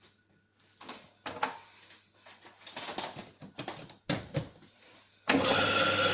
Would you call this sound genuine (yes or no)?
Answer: yes